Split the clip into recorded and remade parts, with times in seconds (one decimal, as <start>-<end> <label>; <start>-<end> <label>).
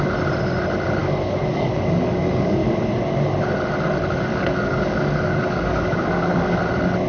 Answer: 0.0-1.0 recorded; 1.0-2.7 remade; 2.7-4.3 recorded; 4.3-6.6 remade; 6.6-7.1 recorded